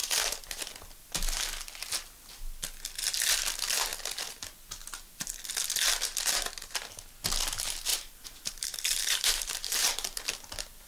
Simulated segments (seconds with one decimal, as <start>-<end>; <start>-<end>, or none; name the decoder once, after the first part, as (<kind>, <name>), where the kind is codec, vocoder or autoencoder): 0.0-0.6 (vocoder, BigVGAN v2); 7.9-10.2